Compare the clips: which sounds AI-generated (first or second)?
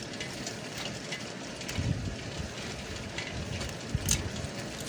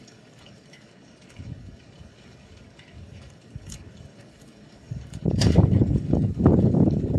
second